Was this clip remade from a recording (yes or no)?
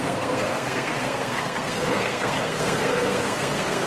yes